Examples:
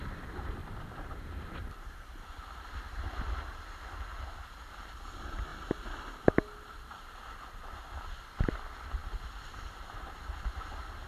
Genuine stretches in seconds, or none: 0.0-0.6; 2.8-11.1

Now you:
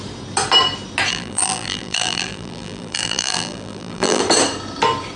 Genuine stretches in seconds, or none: 0.0-1.1; 4.2-5.2